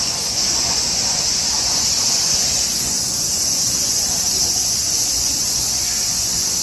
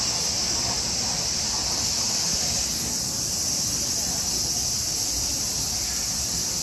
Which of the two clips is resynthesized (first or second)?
first